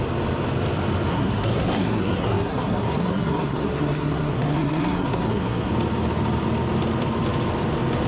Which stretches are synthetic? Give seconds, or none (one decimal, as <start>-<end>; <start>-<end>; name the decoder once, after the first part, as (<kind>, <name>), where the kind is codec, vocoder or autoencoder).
1.1-5.7 (codec, SNAC)